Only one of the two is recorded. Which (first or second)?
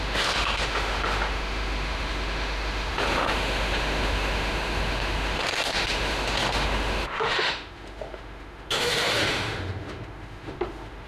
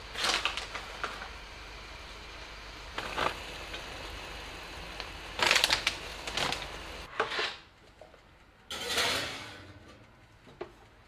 second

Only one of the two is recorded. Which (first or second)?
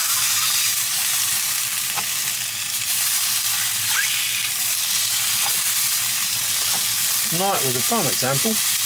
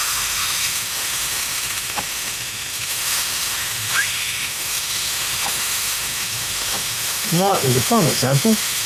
first